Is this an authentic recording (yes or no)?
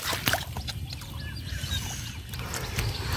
yes